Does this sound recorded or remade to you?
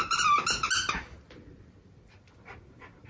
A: recorded